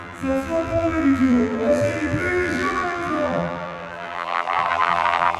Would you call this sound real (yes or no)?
no